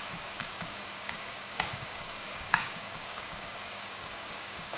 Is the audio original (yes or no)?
no